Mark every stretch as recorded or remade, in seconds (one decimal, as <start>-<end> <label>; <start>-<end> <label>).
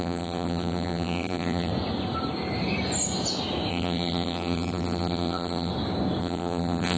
0.0-1.7 remade; 1.7-3.7 recorded; 3.7-5.7 remade; 5.7-6.2 recorded; 6.2-7.0 remade